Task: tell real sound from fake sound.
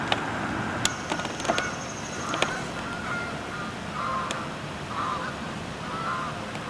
real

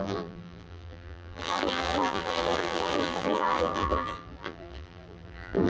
fake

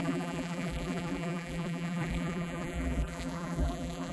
fake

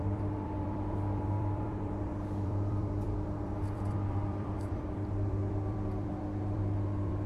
fake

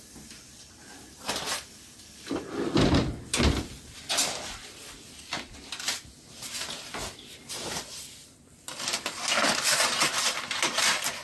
fake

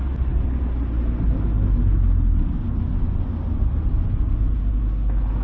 real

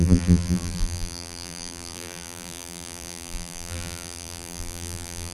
fake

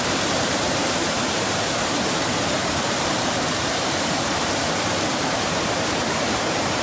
fake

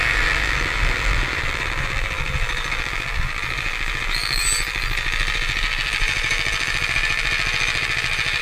fake